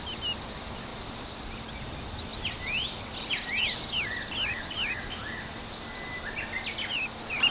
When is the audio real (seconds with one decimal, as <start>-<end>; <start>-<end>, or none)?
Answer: 0.0-2.3; 3.5-7.5